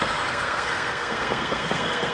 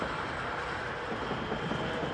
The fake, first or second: first